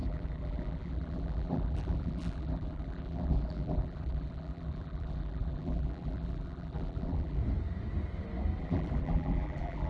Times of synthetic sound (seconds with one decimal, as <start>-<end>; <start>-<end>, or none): 0.0-7.4; 8.6-9.9